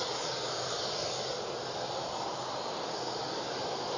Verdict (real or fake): real